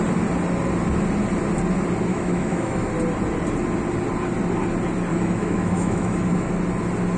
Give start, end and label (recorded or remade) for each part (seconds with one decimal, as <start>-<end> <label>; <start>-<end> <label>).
0.0-2.1 recorded; 2.1-2.9 remade; 2.9-5.1 recorded; 5.1-6.5 remade; 6.5-7.2 recorded

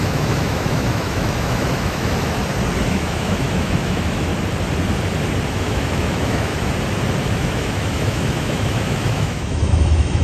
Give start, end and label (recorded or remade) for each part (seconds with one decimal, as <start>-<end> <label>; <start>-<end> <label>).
0.0-2.4 remade; 2.4-2.9 recorded; 2.9-4.3 remade; 4.3-5.5 recorded; 5.5-6.5 remade; 6.5-7.2 recorded; 7.2-10.2 remade